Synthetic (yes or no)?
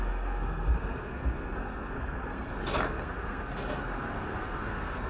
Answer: yes